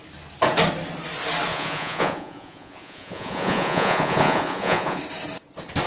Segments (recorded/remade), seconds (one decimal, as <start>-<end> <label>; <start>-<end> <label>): 0.0-1.5 recorded; 1.5-5.0 remade; 5.0-5.9 recorded